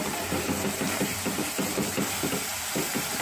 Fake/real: fake